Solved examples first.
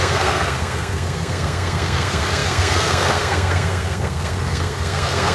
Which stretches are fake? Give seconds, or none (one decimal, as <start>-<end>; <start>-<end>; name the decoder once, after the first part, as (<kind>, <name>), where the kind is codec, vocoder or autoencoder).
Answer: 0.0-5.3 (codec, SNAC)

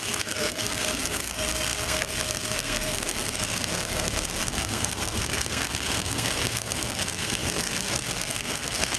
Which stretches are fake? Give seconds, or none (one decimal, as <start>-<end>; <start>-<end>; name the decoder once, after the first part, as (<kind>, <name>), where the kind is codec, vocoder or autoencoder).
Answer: 0.0-9.0 (codec, SNAC)

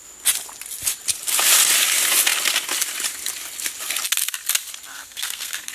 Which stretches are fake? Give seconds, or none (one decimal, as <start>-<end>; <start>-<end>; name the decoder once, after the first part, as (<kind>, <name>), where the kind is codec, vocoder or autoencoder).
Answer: 4.9-5.7 (codec, SNAC)

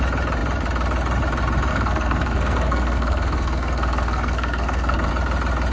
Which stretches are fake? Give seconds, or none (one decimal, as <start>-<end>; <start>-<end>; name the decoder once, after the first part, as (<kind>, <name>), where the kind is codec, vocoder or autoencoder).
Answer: 1.7-5.1 (codec, SNAC)